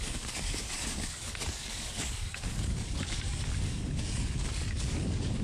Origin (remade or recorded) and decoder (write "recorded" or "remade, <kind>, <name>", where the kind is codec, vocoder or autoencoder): remade, codec, DAC